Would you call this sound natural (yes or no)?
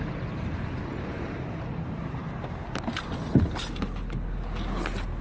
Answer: yes